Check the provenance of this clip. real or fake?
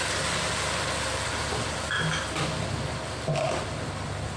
real